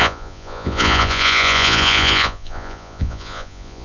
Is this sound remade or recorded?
remade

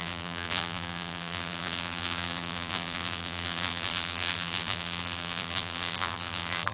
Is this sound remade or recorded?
remade